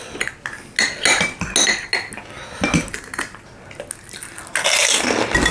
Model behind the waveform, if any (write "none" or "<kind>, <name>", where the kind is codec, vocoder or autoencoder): none